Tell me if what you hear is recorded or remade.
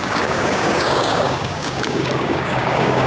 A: remade